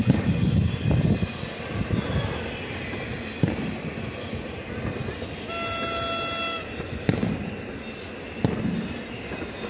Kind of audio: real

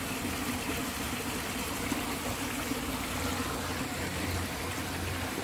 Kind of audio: real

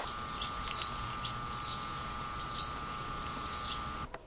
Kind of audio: real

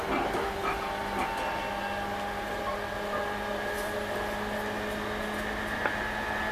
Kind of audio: real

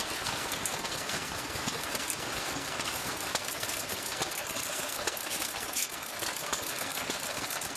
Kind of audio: fake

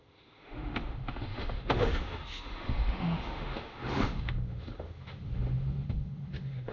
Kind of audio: fake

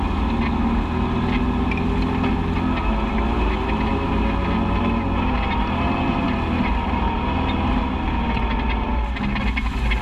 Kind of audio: real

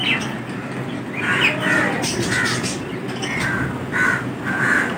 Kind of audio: real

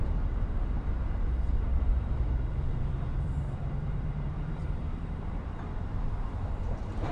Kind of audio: fake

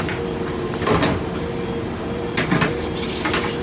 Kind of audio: fake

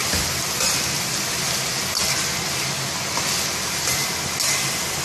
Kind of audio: real